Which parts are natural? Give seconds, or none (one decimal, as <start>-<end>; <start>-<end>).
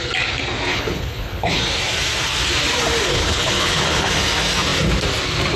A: 0.0-0.7; 1.6-3.1; 4.1-5.6